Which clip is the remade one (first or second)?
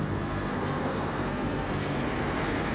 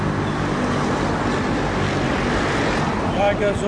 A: first